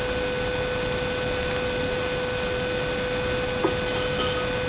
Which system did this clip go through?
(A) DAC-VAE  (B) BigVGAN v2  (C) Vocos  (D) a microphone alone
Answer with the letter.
D